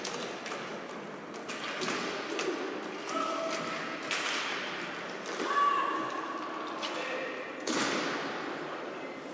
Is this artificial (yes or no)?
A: no